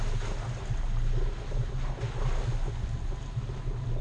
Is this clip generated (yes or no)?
no